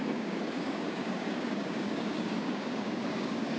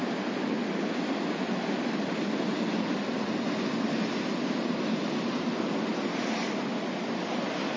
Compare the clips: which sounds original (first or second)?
second